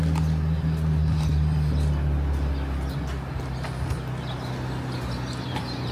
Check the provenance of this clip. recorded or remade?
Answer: recorded